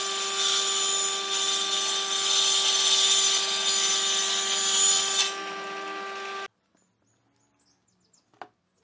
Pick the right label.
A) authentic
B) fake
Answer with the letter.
A